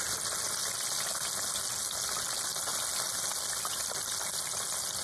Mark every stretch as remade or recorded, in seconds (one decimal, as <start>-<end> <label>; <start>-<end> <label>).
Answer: 0.0-5.0 recorded